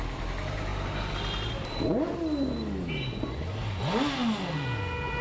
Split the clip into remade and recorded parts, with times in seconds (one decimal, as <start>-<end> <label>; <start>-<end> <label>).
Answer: 0.0-5.2 recorded